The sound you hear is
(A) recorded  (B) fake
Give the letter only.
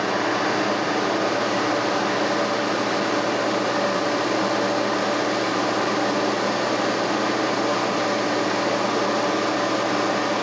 A